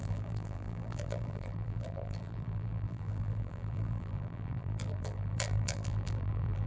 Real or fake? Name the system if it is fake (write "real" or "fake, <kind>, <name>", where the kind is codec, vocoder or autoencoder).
fake, vocoder, BigVGAN v2